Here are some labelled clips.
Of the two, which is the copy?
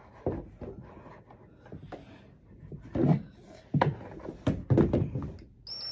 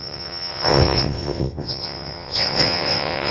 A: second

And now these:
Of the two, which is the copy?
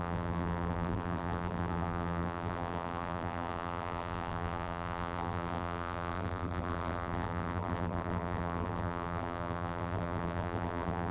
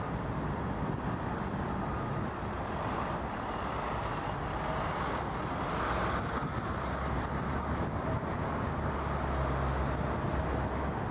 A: first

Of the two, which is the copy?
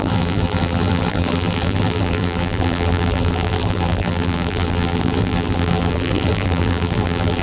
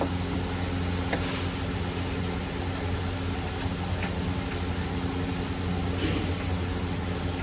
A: first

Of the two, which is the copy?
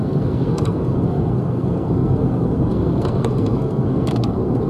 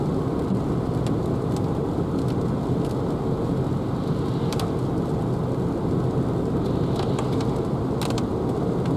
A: first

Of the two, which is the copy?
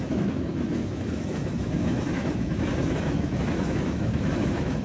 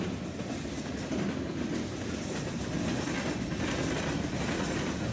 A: first